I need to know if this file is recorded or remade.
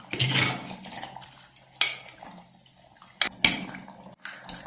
recorded